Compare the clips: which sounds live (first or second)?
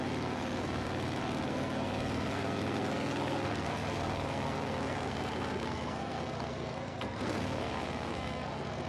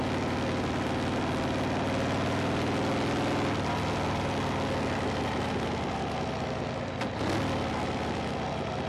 second